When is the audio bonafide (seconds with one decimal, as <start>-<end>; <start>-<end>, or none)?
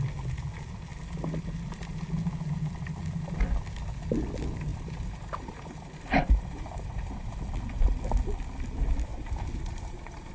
0.0-4.7; 7.4-9.1